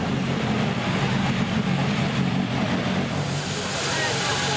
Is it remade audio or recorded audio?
recorded